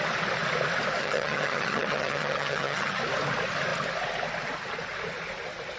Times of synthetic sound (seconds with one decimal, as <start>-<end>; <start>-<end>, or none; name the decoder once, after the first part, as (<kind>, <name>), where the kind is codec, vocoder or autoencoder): 1.0-3.0 (vocoder, HiFi-GAN)